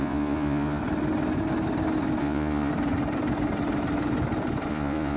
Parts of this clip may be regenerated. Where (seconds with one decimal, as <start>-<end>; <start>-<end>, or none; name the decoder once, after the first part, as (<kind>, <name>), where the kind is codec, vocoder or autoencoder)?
0.0-0.8 (vocoder, Vocos); 2.2-2.7; 4.7-5.2